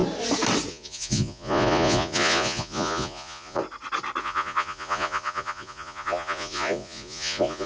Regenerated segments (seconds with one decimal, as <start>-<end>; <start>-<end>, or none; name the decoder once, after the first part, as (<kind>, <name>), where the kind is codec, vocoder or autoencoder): 0.7-3.6 (vocoder, Vocos); 4.2-7.7